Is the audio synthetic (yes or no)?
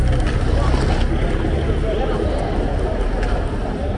no